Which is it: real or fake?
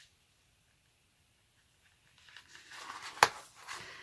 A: real